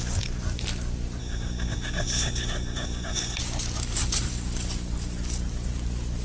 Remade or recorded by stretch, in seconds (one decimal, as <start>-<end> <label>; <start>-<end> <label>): 0.0-1.2 recorded; 1.2-3.4 remade; 3.4-6.2 recorded